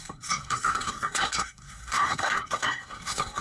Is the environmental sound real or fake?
fake